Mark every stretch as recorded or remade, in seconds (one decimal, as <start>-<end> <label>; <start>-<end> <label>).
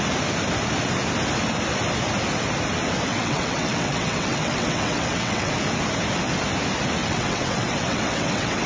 0.0-3.1 recorded; 3.1-5.5 remade; 5.5-7.0 recorded; 7.0-8.7 remade